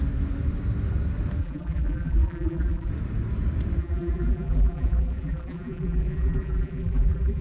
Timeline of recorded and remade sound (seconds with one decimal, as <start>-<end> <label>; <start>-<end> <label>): 0.0-1.4 recorded; 1.4-2.9 remade; 2.9-3.8 recorded; 3.8-7.4 remade